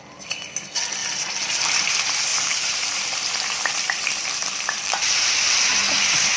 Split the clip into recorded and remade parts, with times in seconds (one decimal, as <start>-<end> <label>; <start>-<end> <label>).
0.0-1.0 recorded; 1.0-1.9 remade; 1.9-2.3 recorded; 2.3-5.7 remade; 5.7-6.4 recorded